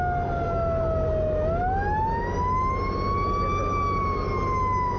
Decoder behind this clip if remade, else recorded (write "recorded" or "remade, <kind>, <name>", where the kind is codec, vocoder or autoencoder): recorded